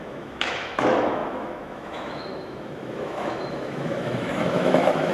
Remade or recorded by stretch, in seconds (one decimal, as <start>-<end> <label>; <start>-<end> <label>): 0.0-5.1 remade